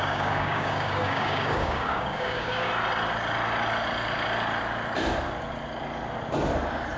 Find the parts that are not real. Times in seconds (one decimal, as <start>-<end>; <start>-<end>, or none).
0.0-2.7